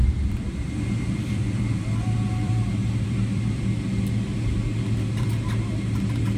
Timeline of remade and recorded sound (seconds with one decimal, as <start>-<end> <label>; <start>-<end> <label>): 0.0-3.6 remade; 3.6-6.4 recorded